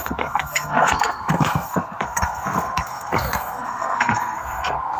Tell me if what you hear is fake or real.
fake